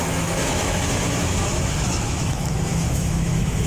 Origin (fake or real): fake